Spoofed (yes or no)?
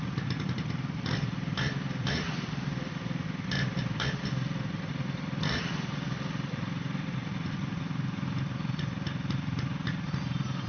yes